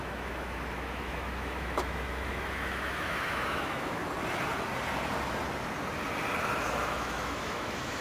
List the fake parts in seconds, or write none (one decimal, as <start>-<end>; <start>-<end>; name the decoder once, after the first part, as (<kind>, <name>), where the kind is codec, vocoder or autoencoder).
0.0-4.0 (autoencoder, DAC-VAE); 6.7-8.0